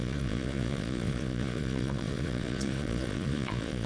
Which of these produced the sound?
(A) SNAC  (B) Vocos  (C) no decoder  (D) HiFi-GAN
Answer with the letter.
B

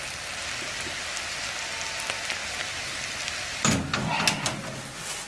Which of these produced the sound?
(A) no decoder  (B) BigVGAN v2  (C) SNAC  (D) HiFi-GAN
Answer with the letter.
A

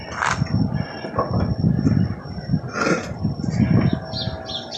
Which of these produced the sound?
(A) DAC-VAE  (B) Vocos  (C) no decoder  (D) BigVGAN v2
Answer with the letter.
C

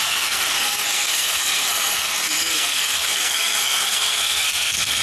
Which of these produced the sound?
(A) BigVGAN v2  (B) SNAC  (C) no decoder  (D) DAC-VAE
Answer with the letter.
B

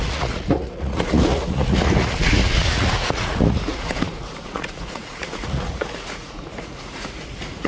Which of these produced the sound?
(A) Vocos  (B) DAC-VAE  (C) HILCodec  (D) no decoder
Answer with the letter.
A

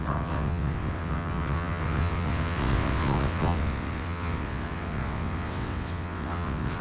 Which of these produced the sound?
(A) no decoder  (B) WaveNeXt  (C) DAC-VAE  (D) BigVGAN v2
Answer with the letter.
B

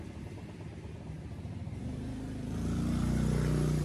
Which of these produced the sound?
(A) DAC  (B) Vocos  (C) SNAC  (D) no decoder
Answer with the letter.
D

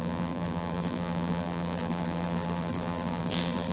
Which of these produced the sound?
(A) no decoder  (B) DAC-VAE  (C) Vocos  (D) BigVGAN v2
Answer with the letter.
D